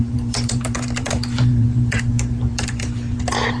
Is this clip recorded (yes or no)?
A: no